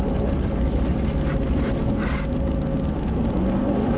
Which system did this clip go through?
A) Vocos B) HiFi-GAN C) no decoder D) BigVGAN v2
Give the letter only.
C